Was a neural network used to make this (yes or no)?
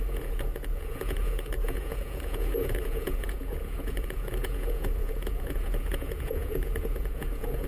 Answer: yes